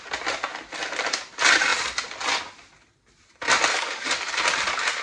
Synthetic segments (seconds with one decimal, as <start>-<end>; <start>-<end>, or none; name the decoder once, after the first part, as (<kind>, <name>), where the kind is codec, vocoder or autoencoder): 3.7-4.3 (codec, DAC)